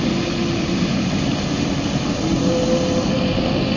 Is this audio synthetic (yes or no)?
no